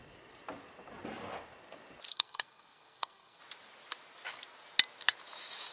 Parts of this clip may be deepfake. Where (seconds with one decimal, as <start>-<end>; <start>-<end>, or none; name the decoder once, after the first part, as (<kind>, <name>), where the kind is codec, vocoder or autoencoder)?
2.1-3.4 (codec, SNAC)